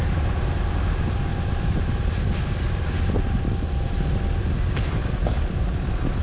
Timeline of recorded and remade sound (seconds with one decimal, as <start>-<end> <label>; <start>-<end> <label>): 0.0-0.6 remade; 0.6-1.3 recorded; 1.3-2.3 remade; 2.3-6.2 recorded